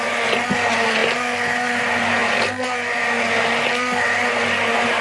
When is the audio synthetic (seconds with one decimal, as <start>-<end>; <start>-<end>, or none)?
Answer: 1.0-1.8; 2.2-5.0